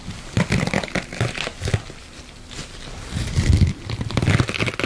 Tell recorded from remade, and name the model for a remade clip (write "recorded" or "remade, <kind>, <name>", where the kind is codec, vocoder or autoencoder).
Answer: recorded